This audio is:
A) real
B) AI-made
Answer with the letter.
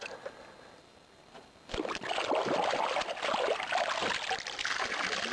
A